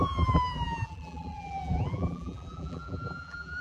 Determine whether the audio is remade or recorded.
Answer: remade